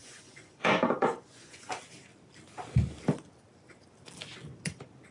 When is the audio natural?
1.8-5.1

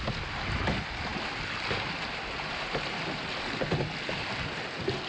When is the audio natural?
0.0-5.1

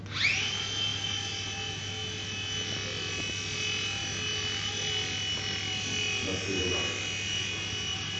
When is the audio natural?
0.0-8.2